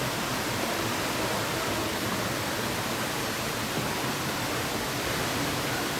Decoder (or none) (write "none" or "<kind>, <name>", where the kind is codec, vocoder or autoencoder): vocoder, BigVGAN v2